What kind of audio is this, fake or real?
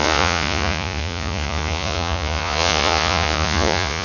fake